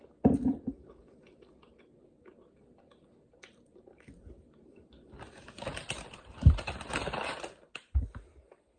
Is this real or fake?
real